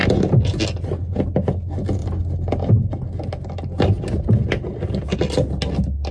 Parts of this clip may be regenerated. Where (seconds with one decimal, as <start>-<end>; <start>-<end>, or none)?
none